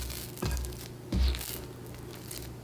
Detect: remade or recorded recorded